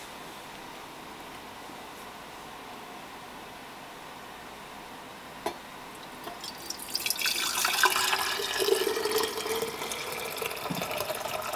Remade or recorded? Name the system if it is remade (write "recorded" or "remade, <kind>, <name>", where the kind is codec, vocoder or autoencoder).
recorded